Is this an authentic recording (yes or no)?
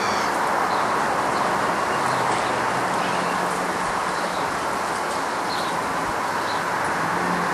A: yes